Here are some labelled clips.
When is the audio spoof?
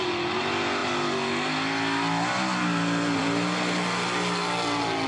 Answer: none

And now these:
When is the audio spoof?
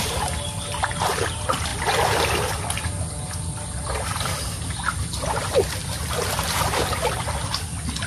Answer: none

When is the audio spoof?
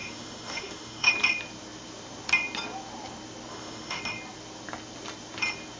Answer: 0.0-1.1 (autoencoder, DAC-VAE); 3.5-4.0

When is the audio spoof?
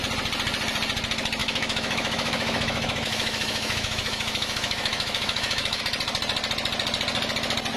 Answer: 1.4-5.8 (autoencoder, DAC-VAE)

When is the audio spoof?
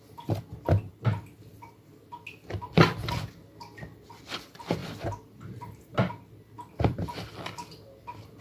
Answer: none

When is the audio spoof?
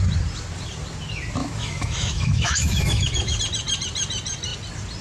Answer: 1.4-3.4 (autoencoder, DAC-VAE)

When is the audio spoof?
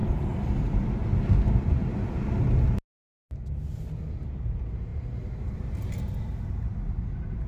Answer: none